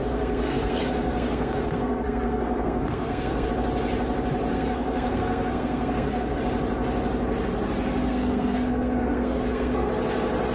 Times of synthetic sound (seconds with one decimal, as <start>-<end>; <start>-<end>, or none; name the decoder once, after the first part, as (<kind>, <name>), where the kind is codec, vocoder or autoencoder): 0.0-3.5 (codec, SNAC); 4.5-6.4; 8.1-9.9